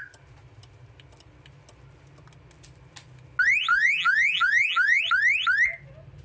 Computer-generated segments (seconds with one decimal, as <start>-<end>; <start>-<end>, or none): 3.7-5.0

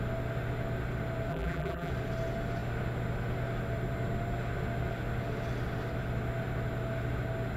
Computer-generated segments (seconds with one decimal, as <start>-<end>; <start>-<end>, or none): 1.3-1.9

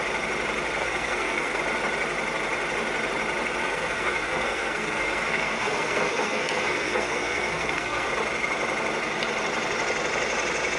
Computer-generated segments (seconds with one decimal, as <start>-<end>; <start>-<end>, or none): 0.8-1.6; 3.6-8.1